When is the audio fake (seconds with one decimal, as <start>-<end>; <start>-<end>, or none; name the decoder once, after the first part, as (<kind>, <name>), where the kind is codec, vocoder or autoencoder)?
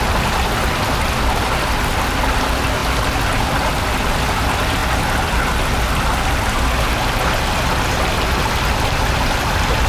none